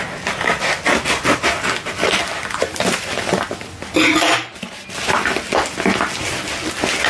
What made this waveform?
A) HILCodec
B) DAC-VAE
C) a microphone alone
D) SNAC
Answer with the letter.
C